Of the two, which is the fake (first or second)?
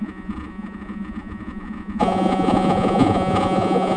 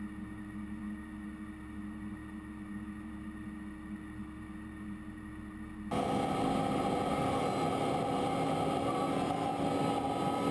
first